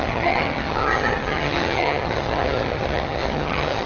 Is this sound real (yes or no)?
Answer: no